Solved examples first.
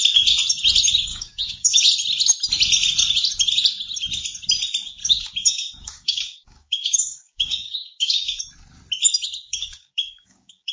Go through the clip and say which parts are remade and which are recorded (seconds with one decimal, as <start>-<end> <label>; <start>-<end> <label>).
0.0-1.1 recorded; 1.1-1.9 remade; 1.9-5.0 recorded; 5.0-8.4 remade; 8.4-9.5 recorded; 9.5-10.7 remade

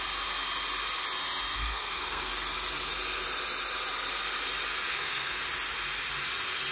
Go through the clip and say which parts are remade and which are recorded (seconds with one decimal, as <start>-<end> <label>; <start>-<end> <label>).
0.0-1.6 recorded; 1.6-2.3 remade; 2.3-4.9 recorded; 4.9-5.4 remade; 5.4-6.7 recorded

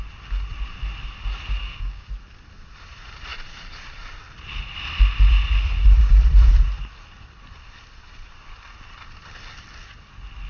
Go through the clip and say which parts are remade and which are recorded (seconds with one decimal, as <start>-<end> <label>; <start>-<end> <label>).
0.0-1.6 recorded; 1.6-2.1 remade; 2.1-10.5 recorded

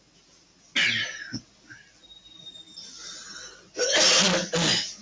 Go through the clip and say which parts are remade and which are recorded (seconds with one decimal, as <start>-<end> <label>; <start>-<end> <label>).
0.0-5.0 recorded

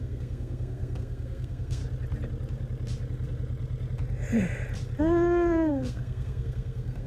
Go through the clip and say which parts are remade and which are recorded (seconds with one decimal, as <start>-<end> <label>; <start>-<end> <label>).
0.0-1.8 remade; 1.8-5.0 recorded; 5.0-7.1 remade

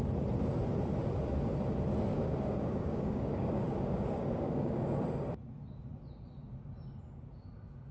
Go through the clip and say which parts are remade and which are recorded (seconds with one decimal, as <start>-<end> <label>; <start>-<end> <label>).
0.0-2.1 recorded; 2.1-5.0 remade; 5.0-7.9 recorded

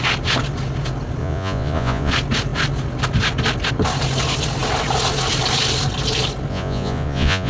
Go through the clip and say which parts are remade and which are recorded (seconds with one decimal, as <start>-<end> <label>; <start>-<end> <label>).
0.0-1.2 recorded; 1.2-2.1 remade; 2.1-6.5 recorded; 6.5-7.5 remade